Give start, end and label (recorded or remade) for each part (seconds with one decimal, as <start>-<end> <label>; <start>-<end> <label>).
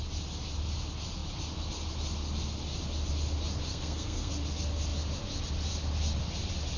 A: 0.0-3.7 recorded; 3.7-4.3 remade; 4.3-6.8 recorded